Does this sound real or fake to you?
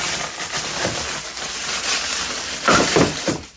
real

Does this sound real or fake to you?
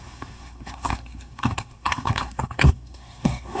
fake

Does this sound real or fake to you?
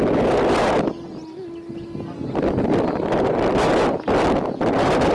real